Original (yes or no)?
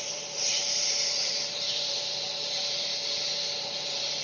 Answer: no